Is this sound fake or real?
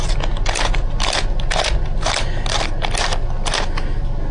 real